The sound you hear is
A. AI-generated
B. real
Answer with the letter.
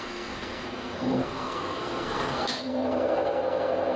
A